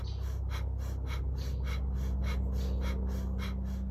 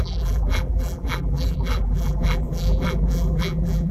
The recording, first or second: first